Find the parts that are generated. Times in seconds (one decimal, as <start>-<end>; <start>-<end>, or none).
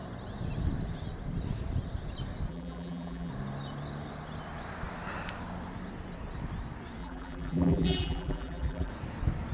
2.5-3.3; 7.0-8.9